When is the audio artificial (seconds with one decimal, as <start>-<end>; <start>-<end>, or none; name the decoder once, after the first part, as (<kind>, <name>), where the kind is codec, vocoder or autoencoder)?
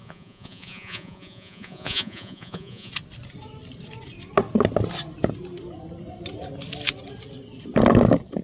0.0-2.9 (vocoder, Vocos)